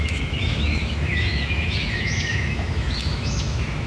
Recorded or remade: remade